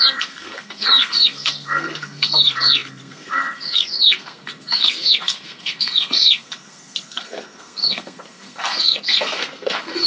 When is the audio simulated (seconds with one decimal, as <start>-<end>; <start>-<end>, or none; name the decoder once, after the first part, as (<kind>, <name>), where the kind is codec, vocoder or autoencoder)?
0.0-10.1 (codec, SNAC)